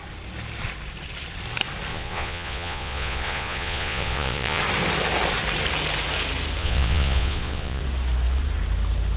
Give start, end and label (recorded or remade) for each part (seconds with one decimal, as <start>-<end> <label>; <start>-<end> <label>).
0.0-1.9 recorded; 1.9-4.6 remade; 4.6-6.6 recorded; 6.6-7.8 remade; 7.8-9.2 recorded